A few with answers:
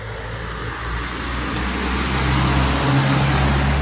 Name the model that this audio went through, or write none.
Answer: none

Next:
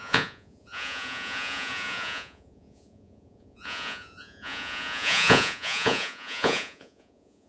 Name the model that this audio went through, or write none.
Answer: vocoder, Vocos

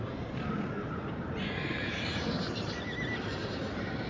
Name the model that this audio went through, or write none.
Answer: vocoder, BigVGAN v2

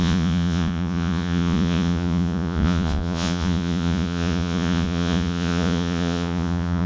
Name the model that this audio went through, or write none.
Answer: vocoder, Vocos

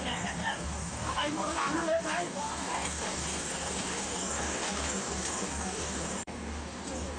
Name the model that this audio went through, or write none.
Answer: codec, DAC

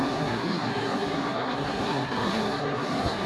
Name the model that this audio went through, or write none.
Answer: codec, SNAC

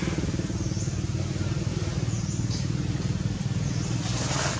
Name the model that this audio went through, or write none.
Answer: none